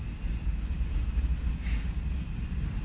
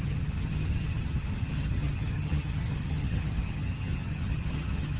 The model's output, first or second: second